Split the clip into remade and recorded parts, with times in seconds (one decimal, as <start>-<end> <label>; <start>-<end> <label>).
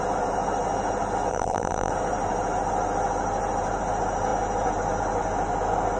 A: 0.0-1.3 recorded; 1.3-1.9 remade; 1.9-6.0 recorded